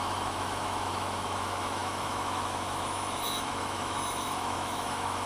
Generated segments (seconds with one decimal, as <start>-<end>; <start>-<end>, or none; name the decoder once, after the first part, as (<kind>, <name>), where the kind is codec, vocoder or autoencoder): 0.0-5.3 (autoencoder, DAC-VAE)